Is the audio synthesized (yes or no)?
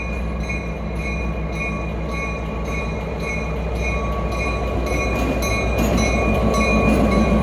no